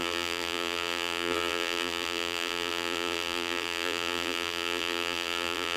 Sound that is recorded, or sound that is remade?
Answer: remade